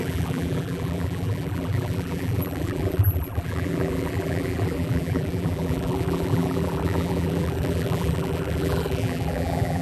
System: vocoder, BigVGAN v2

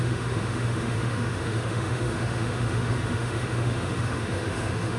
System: autoencoder, DAC-VAE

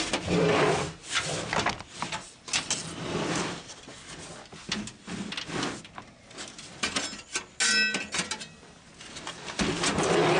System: none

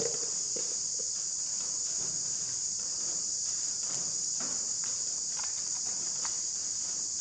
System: vocoder, BigVGAN v2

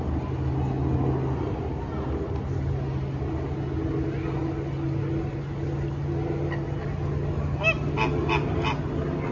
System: none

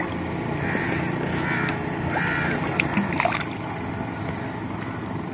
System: none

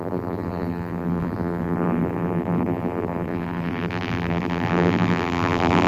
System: vocoder, BigVGAN v2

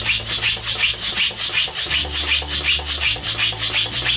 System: none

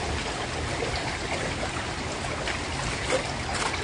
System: none